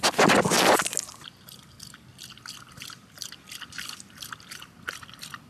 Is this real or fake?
real